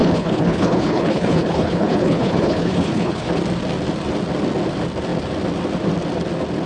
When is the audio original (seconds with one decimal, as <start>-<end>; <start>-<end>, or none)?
3.3-6.7